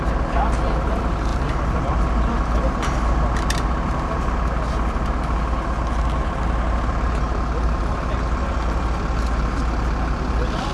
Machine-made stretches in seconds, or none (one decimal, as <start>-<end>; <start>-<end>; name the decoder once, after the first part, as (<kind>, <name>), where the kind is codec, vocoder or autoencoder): none